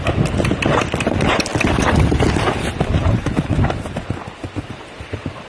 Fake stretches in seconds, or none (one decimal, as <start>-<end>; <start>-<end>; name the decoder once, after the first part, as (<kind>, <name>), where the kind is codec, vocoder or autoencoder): none